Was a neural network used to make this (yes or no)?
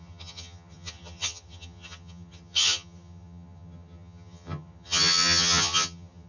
yes